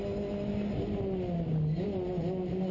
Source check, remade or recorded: recorded